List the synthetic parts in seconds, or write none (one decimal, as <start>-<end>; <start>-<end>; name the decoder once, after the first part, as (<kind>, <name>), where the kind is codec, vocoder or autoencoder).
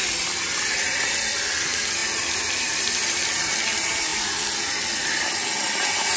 none